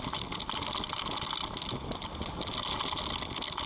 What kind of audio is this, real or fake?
real